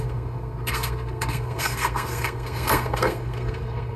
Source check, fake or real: fake